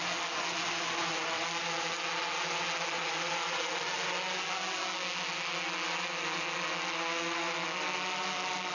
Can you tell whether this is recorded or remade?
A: recorded